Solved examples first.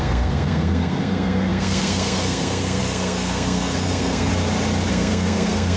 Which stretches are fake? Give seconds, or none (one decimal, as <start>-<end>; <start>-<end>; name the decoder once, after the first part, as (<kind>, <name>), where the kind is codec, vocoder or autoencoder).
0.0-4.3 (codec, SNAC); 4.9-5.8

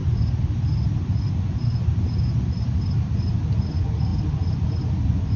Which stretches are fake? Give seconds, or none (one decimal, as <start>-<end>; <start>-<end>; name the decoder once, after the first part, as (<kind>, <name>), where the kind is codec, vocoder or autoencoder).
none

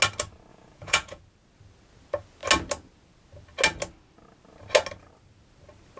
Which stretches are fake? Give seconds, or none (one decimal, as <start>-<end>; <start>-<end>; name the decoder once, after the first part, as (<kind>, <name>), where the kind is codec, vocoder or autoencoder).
0.5-1.2 (vocoder, Vocos)